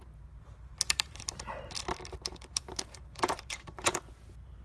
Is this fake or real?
fake